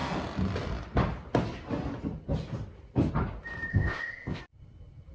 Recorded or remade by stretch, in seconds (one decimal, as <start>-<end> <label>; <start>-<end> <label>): 0.0-3.7 recorded; 3.7-4.4 remade; 4.4-5.1 recorded